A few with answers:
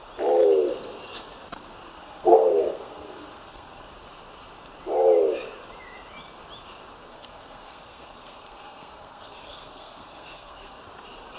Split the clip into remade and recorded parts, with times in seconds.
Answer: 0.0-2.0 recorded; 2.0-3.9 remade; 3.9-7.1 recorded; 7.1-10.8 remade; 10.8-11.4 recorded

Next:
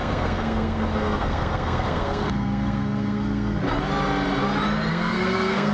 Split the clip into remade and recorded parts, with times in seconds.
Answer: 0.0-3.6 remade; 3.6-4.9 recorded; 4.9-5.7 remade

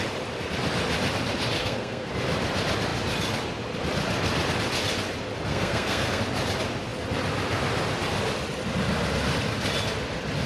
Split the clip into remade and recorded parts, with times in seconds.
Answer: 0.0-1.6 recorded; 1.6-2.1 remade; 2.1-5.5 recorded; 5.5-6.2 remade; 6.2-10.5 recorded

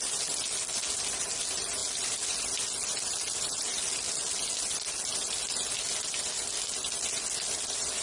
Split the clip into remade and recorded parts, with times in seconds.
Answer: 0.0-8.0 recorded

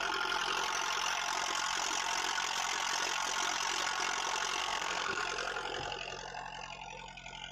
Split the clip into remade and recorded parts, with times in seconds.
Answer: 0.0-4.6 recorded; 4.6-5.2 remade; 5.2-7.5 recorded

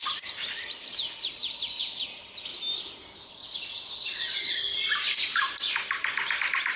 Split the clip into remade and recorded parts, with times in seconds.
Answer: 0.0-6.8 recorded

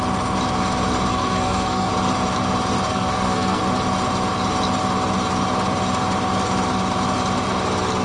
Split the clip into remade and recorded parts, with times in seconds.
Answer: 0.0-1.1 recorded; 1.1-1.9 remade; 1.9-2.9 recorded; 2.9-3.6 remade; 3.6-8.0 recorded